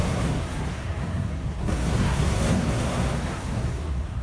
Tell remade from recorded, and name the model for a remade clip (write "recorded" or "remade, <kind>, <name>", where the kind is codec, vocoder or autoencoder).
remade, codec, SNAC